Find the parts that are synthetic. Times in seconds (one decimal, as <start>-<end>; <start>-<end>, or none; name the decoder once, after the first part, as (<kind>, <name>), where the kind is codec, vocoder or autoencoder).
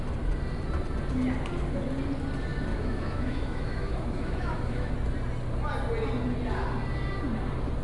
2.7-4.9 (autoencoder, DAC-VAE)